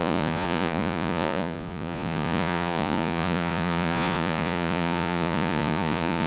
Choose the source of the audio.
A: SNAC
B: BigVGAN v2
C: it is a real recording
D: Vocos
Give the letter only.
D